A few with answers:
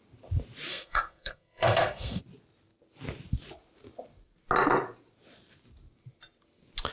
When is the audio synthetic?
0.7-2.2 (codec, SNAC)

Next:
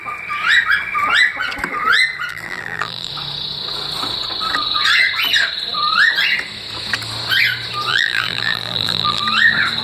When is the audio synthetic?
2.3-3.1 (vocoder, BigVGAN v2); 7.9-9.2

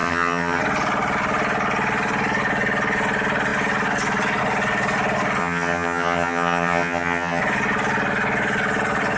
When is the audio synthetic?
0.0-0.6 (vocoder, HiFi-GAN); 5.4-7.4

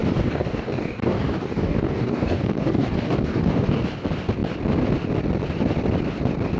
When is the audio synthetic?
0.0-3.8 (codec, DAC)

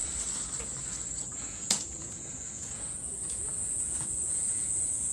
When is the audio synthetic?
1.2-5.1 (vocoder, Vocos)